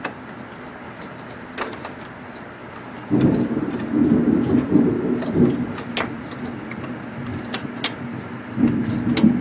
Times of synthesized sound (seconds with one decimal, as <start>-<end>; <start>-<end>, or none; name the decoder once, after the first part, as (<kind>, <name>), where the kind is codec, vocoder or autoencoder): none